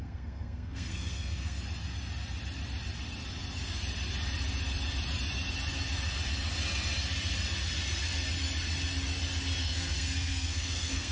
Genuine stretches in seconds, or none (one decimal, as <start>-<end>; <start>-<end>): 1.6-9.6